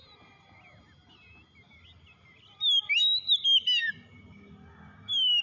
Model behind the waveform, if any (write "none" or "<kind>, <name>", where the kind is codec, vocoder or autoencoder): none